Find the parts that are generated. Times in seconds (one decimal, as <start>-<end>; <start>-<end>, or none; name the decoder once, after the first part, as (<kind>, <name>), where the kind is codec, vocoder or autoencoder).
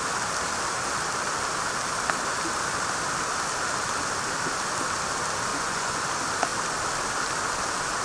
5.5-6.0 (vocoder, Vocos)